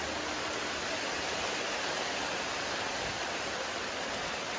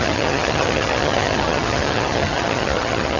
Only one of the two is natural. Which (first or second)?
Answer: first